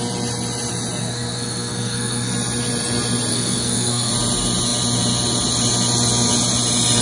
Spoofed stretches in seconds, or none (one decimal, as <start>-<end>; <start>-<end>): 1.0-2.3; 3.3-4.1